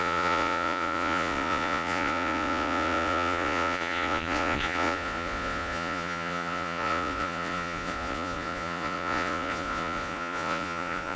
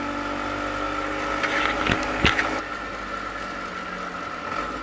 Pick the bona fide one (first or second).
second